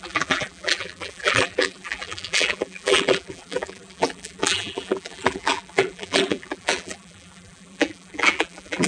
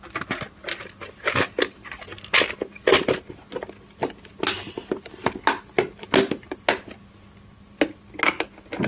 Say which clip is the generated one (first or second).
first